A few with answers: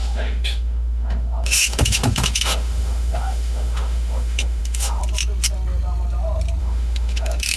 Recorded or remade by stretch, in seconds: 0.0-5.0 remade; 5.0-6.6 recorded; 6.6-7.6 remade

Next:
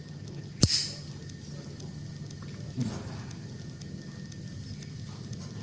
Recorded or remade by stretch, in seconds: 0.0-5.6 recorded